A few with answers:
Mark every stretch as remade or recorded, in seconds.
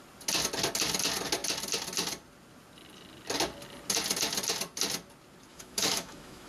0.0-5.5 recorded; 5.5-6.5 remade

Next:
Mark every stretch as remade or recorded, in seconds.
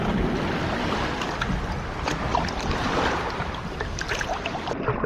0.0-5.1 recorded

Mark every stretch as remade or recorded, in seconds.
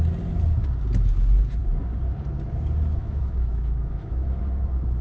0.0-3.0 recorded; 3.0-4.4 remade; 4.4-5.0 recorded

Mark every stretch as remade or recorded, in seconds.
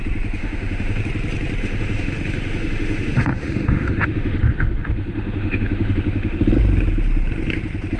0.0-0.4 recorded; 0.4-1.0 remade; 1.0-1.6 recorded; 1.6-6.4 remade; 6.4-8.0 recorded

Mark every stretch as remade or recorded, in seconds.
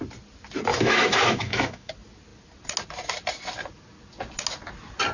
0.0-0.7 recorded; 0.7-1.9 remade; 1.9-5.1 recorded